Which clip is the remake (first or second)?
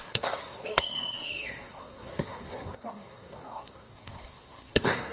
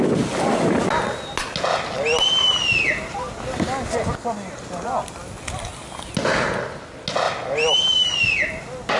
first